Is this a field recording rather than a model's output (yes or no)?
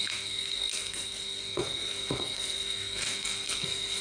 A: no